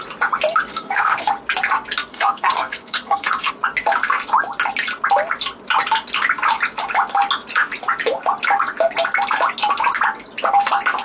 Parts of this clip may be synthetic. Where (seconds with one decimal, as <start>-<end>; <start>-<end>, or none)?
0.7-1.3; 2.1-3.5